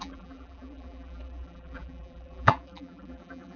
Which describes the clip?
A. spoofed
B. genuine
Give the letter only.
A